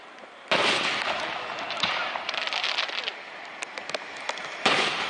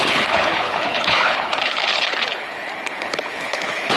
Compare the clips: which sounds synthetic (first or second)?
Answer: second